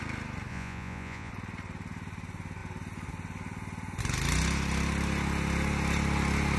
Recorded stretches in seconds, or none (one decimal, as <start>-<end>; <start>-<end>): 0.0-0.5; 1.3-6.6